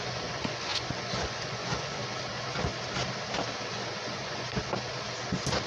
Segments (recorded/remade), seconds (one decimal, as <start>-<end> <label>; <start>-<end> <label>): 0.0-2.0 remade; 2.0-3.7 recorded; 3.7-4.6 remade; 4.6-5.7 recorded